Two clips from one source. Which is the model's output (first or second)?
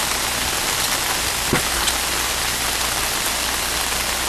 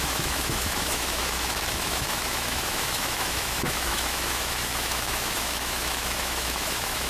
second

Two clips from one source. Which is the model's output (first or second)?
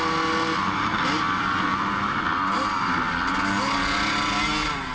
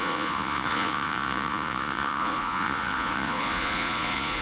second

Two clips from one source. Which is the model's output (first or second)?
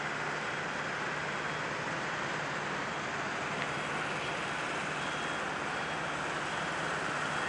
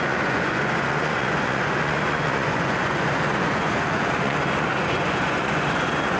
second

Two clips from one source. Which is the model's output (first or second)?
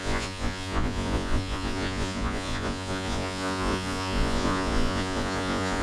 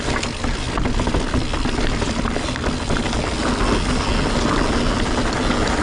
first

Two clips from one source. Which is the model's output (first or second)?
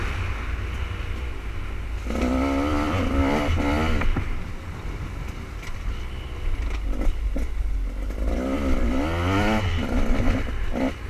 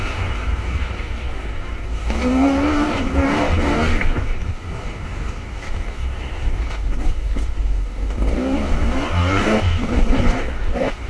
second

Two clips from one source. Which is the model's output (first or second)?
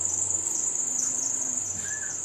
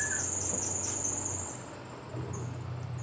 first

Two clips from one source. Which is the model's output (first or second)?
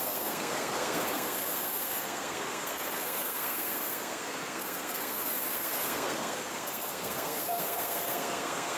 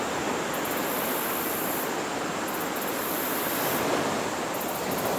first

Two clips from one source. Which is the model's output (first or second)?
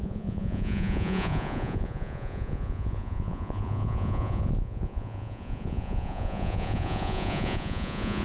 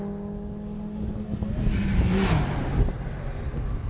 first